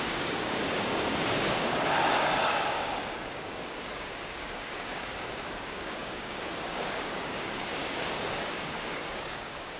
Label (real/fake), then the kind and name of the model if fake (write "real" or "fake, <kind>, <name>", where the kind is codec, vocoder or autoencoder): fake, codec, DAC